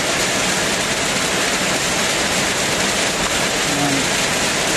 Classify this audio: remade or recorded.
recorded